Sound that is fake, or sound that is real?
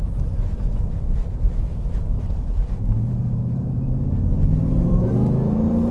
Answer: fake